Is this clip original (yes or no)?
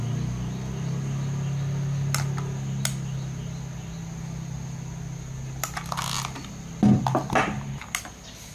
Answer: yes